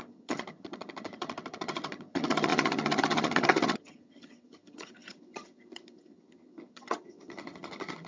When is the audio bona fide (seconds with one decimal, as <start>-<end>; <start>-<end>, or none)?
none

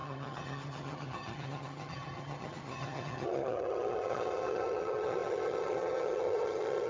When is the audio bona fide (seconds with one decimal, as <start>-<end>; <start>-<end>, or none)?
none

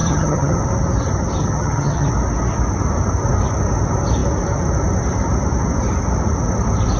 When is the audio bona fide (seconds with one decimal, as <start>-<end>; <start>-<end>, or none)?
0.6-1.4; 2.1-7.0

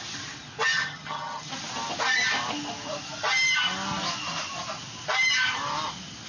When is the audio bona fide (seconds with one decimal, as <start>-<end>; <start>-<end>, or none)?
0.0-0.7; 1.5-6.3

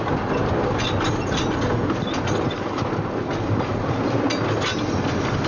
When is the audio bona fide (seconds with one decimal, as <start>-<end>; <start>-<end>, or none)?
0.0-5.5

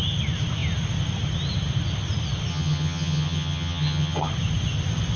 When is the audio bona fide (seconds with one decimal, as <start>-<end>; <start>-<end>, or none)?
0.0-2.5; 4.3-5.2

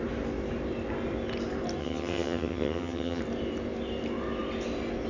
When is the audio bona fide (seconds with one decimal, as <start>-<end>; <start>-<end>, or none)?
0.0-1.8; 3.2-5.1